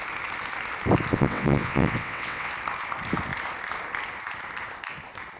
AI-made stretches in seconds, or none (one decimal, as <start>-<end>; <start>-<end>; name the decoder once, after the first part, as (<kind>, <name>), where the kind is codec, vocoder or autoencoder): 1.1-2.5 (vocoder, WaveNeXt)